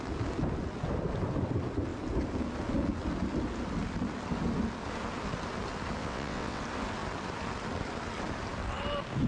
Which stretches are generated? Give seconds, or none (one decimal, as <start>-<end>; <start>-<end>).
6.0-6.6